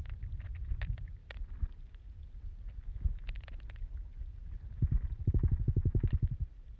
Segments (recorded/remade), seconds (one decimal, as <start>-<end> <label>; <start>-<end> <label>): 0.0-1.2 remade; 1.2-5.3 recorded; 5.3-6.8 remade